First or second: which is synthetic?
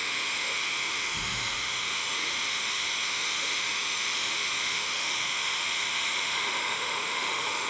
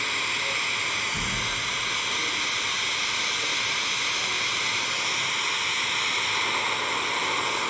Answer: first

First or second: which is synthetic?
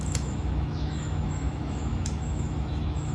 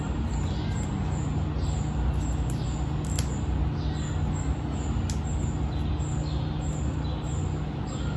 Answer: first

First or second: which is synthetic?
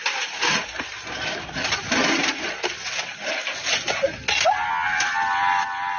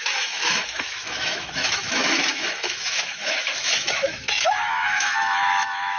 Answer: second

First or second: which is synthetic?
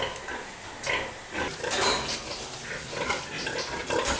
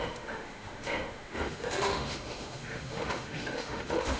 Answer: second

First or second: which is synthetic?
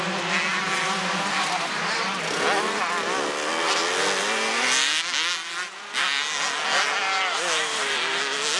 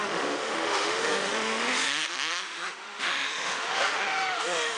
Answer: second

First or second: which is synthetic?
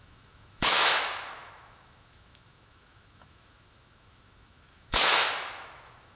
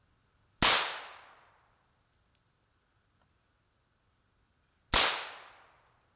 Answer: first